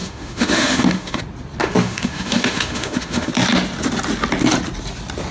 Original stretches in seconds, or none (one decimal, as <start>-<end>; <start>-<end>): 1.2-1.6; 3.3-5.3